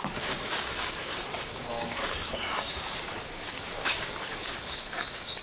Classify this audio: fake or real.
fake